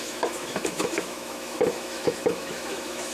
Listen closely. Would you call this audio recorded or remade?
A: remade